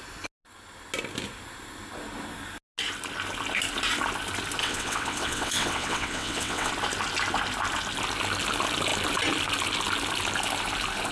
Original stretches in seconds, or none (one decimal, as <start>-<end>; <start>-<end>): 0.0-4.6; 6.7-11.1